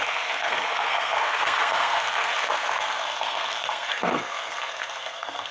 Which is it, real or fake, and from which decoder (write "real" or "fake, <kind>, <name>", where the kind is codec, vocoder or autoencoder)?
fake, codec, SNAC